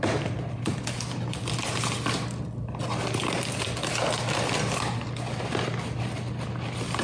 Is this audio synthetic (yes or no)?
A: no